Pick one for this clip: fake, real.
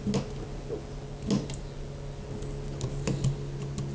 real